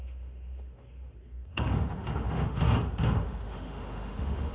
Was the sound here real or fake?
fake